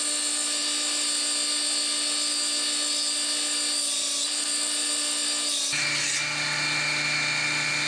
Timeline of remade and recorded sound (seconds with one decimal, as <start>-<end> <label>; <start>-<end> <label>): 0.0-7.9 recorded